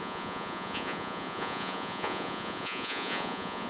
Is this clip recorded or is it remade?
remade